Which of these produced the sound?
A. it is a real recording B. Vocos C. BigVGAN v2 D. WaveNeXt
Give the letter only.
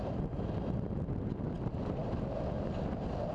A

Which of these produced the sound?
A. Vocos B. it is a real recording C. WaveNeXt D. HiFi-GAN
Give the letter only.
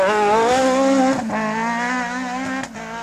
B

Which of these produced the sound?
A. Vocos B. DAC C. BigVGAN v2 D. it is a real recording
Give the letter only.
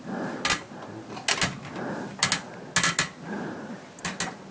D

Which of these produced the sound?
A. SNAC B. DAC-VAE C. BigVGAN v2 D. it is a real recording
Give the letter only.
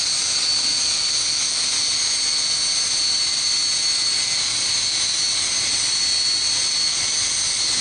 D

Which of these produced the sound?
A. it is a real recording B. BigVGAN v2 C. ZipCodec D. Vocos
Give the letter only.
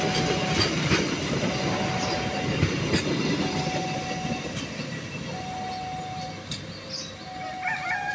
A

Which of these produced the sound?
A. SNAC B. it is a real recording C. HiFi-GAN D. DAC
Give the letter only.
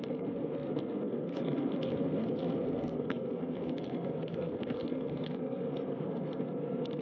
A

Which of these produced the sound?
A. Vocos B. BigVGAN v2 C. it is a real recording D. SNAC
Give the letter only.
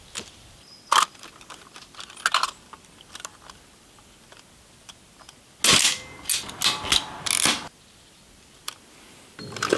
C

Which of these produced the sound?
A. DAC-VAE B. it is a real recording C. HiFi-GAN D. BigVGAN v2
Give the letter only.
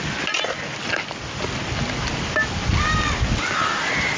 B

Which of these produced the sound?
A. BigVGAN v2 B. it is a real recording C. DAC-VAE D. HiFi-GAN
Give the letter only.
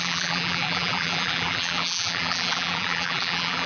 A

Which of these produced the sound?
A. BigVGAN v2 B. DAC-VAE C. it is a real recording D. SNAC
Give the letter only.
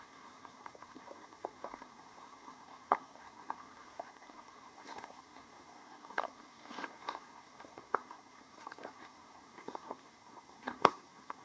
D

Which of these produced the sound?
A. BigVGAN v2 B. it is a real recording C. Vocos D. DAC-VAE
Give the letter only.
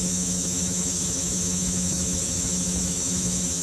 D